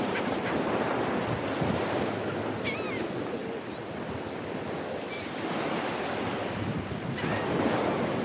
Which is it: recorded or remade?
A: recorded